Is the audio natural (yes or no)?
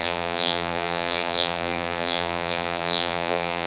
no